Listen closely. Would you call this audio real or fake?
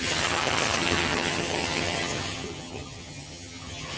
fake